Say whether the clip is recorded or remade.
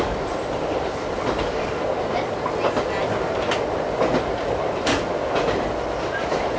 recorded